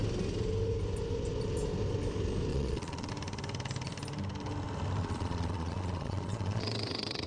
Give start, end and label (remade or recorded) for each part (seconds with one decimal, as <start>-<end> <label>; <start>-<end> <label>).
0.0-2.5 recorded; 2.5-3.1 remade; 3.1-5.0 recorded; 5.0-7.3 remade